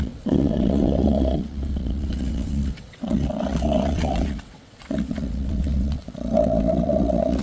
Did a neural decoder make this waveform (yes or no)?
yes